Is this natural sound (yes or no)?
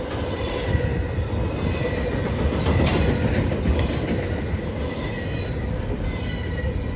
yes